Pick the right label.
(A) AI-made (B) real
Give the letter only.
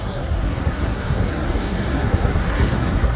A